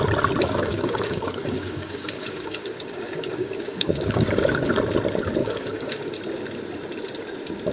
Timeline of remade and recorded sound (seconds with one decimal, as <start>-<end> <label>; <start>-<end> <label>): 0.0-0.4 recorded; 0.4-4.7 remade; 4.7-5.4 recorded; 5.4-6.2 remade; 6.2-7.7 recorded